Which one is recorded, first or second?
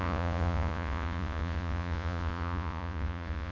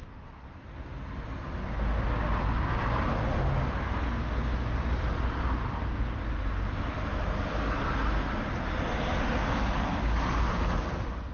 second